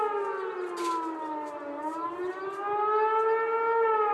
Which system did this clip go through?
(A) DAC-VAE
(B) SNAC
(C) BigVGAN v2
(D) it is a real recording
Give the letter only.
D